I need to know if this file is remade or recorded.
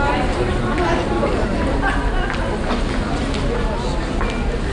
recorded